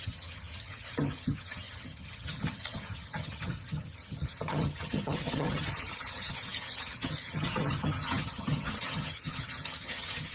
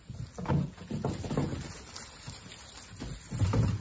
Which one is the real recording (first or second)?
second